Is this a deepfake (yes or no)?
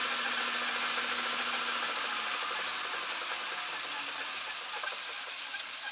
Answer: no